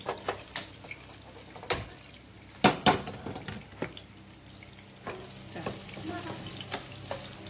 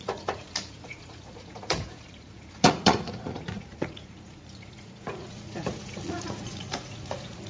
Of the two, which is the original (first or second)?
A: first